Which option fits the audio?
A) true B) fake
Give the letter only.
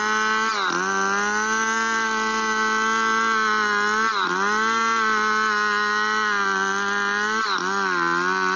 A